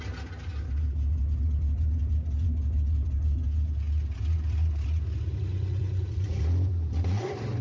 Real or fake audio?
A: real